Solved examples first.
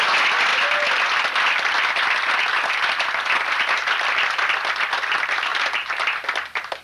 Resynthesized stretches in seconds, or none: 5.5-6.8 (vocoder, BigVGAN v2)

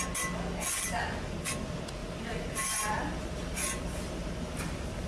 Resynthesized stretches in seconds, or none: 2.0-5.1 (vocoder, BigVGAN v2)

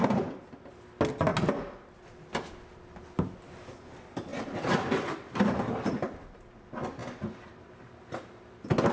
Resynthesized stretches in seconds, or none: 4.3-6.4 (vocoder, BigVGAN v2); 7.0-8.5

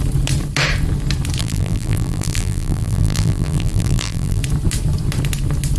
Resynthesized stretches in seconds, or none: 1.4-4.4 (vocoder, BigVGAN v2)

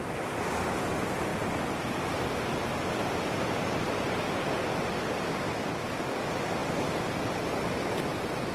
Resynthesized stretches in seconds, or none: none

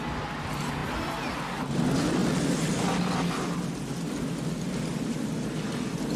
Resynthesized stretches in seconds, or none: 0.8-1.4 (vocoder, BigVGAN v2)

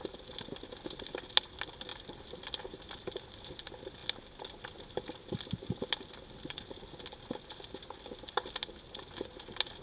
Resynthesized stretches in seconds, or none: 1.9-2.6 (vocoder, BigVGAN v2)

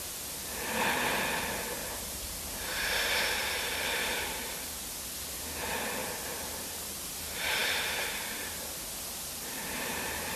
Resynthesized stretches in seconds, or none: 6.0-6.7 (vocoder, BigVGAN v2)